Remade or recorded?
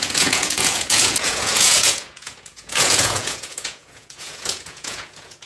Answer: remade